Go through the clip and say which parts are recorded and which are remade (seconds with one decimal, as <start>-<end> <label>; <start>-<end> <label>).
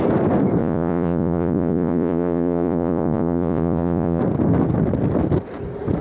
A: 0.0-0.6 recorded; 0.6-4.2 remade; 4.2-6.0 recorded